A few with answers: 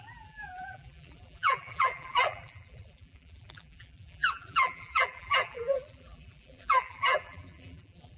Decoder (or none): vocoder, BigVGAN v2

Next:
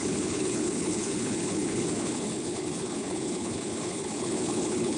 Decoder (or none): codec, HILCodec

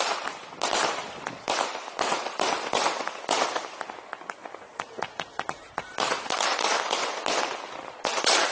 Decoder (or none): none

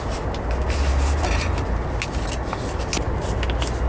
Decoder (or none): none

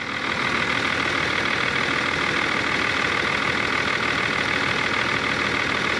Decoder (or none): none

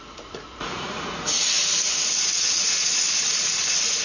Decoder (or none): vocoder, Vocos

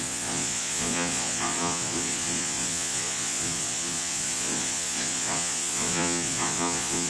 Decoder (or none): vocoder, Vocos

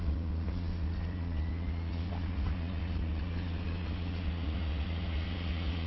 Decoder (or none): vocoder, Vocos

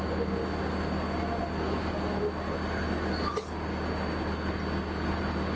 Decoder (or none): none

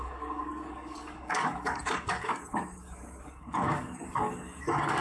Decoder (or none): codec, DAC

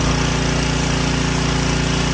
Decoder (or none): none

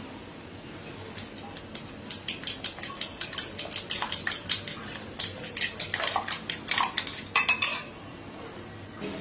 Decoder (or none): none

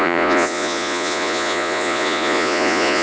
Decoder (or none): vocoder, Vocos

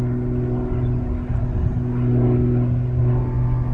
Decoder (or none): none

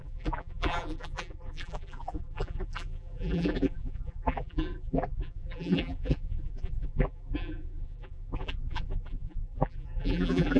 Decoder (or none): vocoder, BigVGAN v2